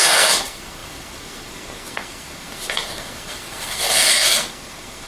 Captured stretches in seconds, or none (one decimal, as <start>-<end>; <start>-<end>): none